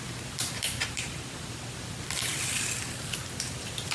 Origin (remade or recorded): remade